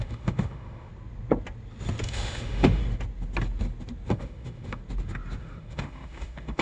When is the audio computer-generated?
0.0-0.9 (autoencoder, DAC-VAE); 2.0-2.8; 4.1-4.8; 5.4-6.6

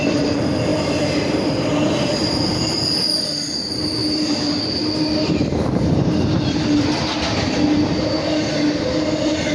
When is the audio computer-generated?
0.7-2.7 (vocoder, BigVGAN v2)

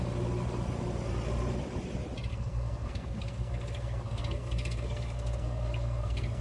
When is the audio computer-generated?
2.3-6.4 (codec, SNAC)

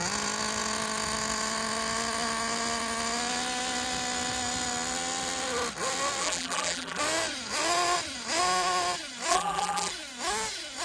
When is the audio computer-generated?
6.2-7.0 (vocoder, BigVGAN v2); 9.3-9.9

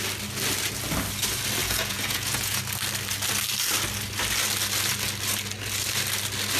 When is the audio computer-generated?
1.6-2.6 (vocoder, Vocos)

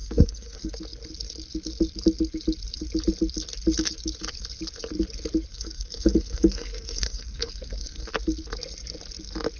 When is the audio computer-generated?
0.0-0.7 (codec, SNAC); 5.5-8.1

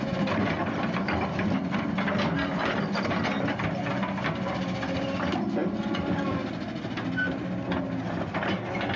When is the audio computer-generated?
none